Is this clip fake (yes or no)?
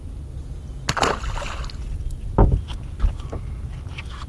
no